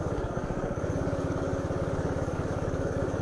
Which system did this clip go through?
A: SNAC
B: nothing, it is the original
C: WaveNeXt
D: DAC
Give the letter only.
D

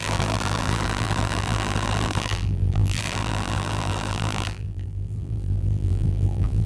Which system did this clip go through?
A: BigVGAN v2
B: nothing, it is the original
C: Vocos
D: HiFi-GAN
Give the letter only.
A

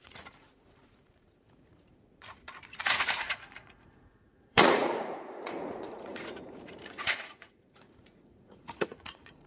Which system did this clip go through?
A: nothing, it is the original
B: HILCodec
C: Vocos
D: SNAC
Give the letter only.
C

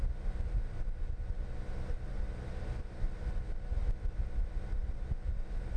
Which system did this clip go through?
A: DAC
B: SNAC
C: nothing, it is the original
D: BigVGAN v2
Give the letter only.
C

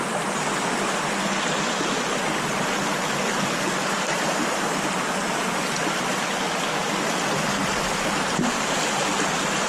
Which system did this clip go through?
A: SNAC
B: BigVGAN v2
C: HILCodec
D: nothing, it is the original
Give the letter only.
D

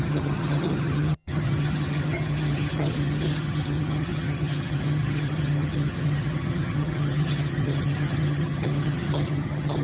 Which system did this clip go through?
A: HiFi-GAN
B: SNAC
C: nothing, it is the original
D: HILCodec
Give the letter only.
A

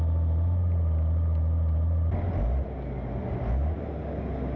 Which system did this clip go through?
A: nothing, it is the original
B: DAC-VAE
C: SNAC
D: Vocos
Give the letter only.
A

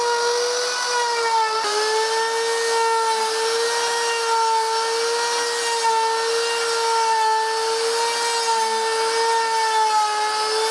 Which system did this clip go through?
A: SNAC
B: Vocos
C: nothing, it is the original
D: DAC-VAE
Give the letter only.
C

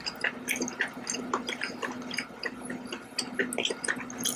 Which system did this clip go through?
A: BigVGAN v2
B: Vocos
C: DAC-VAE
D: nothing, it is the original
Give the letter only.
D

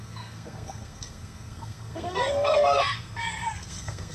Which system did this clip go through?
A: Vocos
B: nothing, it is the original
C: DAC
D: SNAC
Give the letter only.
D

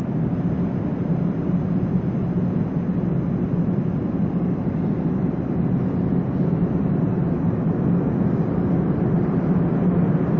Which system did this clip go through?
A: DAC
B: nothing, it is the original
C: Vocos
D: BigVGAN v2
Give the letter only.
B